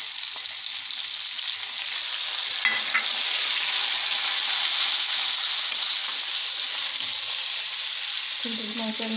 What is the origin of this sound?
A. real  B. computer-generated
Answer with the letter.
A